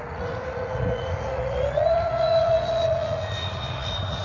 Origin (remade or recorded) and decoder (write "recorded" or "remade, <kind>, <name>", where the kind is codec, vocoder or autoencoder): remade, vocoder, Vocos